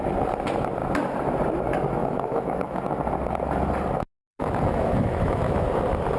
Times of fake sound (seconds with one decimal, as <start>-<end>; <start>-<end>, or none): 2.0-2.8; 4.2-5.7